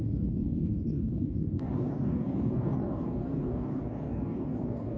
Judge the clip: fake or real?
fake